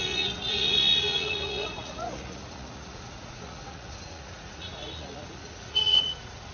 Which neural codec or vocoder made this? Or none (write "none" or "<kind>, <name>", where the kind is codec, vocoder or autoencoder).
vocoder, Vocos